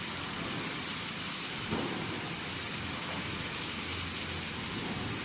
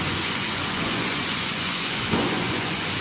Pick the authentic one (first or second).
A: first